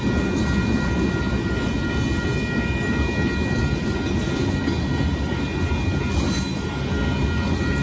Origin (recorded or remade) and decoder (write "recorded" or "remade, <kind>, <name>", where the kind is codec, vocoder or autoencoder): recorded